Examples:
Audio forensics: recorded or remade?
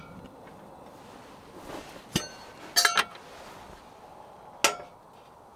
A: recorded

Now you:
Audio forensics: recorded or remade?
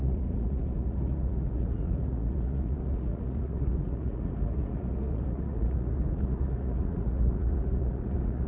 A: remade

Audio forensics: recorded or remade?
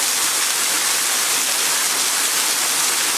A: recorded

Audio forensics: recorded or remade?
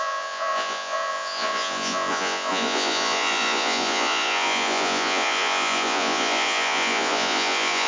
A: remade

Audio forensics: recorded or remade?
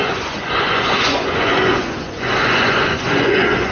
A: remade